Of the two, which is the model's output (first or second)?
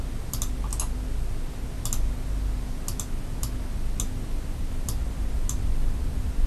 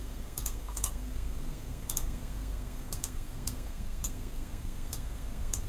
second